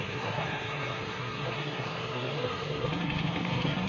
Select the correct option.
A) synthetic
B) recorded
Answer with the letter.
A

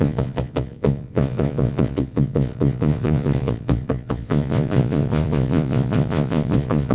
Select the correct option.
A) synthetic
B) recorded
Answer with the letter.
A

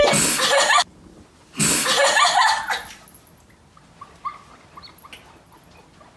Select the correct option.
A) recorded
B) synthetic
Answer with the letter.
A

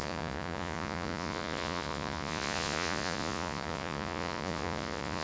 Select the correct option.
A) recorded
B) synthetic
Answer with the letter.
B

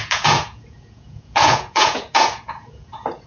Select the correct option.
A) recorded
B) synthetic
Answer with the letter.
B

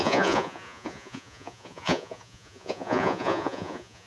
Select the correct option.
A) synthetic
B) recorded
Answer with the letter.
A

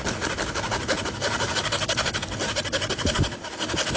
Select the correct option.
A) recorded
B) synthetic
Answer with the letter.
A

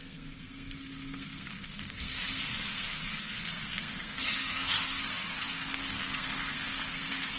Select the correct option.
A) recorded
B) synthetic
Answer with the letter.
B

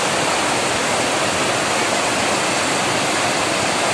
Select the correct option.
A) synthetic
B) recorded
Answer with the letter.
B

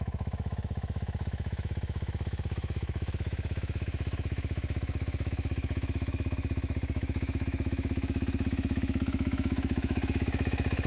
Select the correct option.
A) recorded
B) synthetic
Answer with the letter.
B